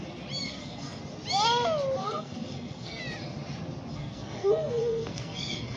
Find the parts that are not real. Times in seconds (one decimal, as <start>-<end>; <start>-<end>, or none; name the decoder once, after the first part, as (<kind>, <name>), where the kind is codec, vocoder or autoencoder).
0.4-1.0 (codec, SNAC); 2.0-3.0; 3.9-5.8

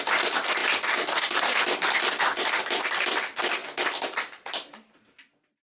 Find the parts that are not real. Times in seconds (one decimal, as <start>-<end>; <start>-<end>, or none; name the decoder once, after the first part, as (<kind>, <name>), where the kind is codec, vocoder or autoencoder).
0.0-0.6 (vocoder, BigVGAN v2); 2.6-5.7

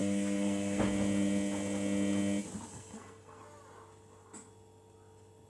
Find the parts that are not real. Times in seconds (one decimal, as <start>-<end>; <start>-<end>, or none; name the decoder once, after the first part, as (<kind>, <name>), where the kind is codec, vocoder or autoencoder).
0.0-0.8 (codec, SNAC); 2.7-3.4

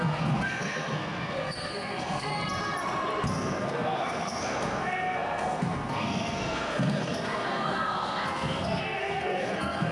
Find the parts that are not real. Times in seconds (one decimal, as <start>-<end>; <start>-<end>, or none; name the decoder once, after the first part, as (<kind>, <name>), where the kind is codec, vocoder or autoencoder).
0.0-2.3 (codec, SNAC); 3.3-9.9

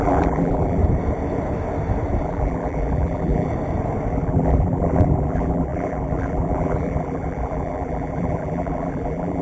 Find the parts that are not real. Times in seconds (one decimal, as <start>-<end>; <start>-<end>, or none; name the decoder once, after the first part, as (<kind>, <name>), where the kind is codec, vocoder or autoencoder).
0.0-0.8 (vocoder, BigVGAN v2); 2.2-3.5; 4.1-9.4

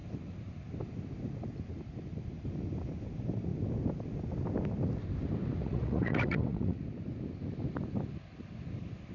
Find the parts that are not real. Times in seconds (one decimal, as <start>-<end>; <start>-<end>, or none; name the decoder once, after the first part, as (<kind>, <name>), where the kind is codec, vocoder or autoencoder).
5.6-6.8 (vocoder, Vocos)

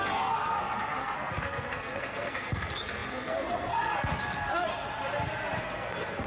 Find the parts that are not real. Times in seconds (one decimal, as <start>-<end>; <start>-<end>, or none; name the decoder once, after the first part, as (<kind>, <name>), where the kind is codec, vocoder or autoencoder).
0.0-4.7 (codec, SNAC); 5.6-6.3